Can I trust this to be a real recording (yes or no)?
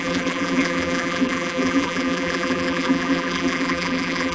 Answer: no